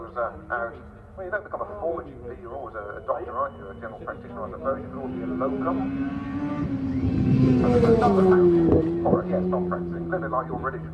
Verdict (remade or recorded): recorded